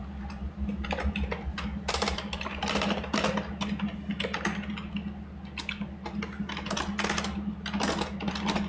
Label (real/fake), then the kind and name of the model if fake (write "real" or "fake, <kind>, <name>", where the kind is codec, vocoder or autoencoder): real